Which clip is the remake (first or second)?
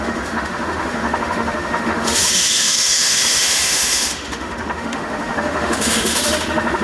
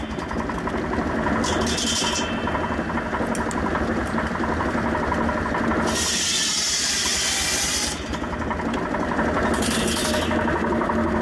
first